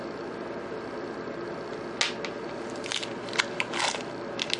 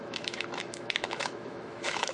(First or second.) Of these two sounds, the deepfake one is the second